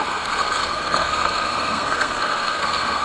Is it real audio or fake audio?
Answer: fake